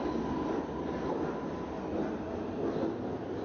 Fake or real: real